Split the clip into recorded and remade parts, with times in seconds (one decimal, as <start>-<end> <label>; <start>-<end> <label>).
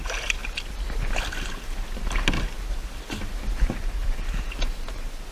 0.0-0.4 remade; 0.4-3.6 recorded; 3.6-5.3 remade